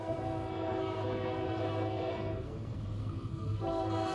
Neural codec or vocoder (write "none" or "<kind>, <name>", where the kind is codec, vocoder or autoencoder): codec, SNAC